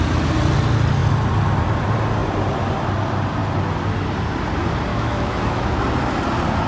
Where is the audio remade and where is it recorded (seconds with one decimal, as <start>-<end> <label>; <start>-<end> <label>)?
0.0-4.9 recorded; 4.9-5.8 remade; 5.8-6.7 recorded